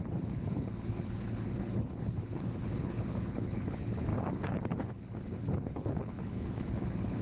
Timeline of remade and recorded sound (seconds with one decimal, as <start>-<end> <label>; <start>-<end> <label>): 0.0-7.2 remade

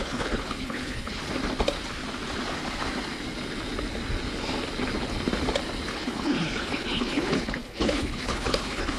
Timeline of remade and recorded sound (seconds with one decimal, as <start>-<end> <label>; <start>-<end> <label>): 0.0-1.2 remade; 1.2-5.9 recorded; 5.9-9.0 remade

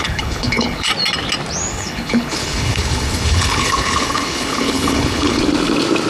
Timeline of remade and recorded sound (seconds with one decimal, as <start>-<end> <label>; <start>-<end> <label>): 0.0-0.9 remade; 0.9-1.7 recorded; 1.7-5.4 remade; 5.4-6.1 recorded

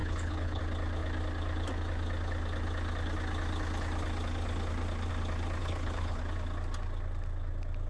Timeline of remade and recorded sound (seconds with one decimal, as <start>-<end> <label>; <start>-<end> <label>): 0.0-0.6 remade; 0.6-5.6 recorded; 5.6-6.2 remade; 6.2-7.9 recorded